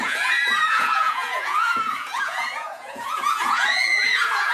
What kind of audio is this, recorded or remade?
remade